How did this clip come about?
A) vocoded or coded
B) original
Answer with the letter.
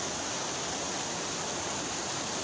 B